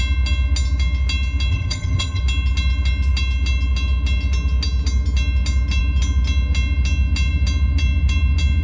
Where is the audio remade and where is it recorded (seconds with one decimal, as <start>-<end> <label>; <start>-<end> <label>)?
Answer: 0.0-1.5 recorded; 1.5-2.2 remade; 2.2-8.6 recorded